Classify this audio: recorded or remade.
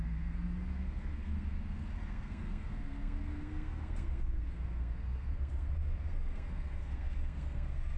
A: remade